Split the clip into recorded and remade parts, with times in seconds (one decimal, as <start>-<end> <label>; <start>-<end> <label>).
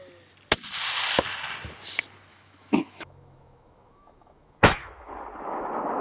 0.0-2.3 recorded; 2.3-5.1 remade; 5.1-6.0 recorded